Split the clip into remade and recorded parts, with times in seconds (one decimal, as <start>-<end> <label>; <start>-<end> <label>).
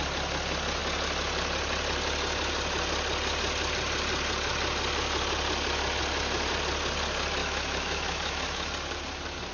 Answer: 0.0-7.4 recorded; 7.4-8.7 remade; 8.7-9.5 recorded